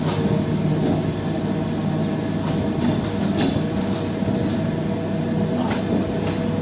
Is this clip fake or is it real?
real